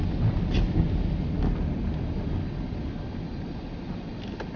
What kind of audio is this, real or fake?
real